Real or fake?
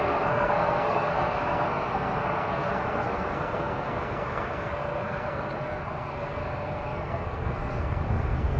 fake